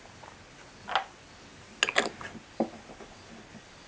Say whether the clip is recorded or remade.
recorded